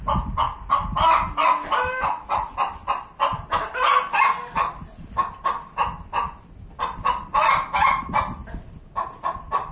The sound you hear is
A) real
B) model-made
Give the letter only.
A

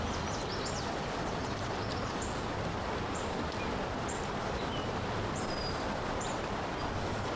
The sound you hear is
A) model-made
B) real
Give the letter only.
A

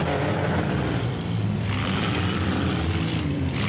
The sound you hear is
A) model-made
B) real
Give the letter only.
A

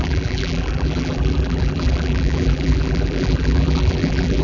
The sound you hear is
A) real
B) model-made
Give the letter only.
B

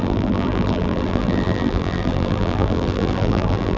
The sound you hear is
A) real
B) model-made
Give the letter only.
B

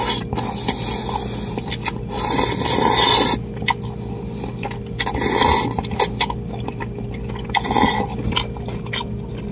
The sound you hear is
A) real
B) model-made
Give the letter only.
A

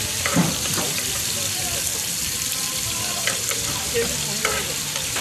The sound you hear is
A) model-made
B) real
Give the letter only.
A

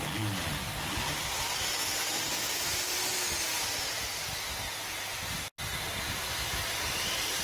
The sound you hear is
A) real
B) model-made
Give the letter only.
A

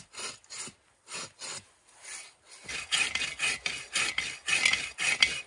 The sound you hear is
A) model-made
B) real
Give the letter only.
B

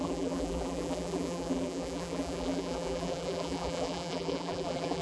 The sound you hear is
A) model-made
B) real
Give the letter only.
A